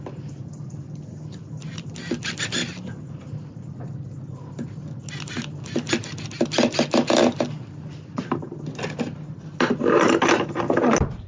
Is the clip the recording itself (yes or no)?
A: yes